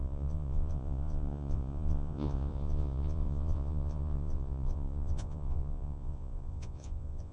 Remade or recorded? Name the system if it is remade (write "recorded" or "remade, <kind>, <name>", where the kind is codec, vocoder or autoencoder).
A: remade, vocoder, Vocos